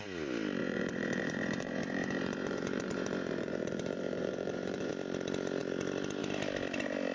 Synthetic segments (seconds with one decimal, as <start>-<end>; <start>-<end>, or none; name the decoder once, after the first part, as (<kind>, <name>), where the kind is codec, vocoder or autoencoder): 0.6-4.9 (vocoder, Vocos)